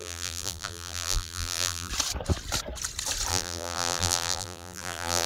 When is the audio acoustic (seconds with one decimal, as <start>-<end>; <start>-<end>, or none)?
1.9-3.3